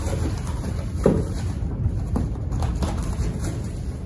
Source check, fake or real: fake